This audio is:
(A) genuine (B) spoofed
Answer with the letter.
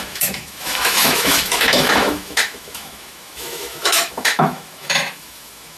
B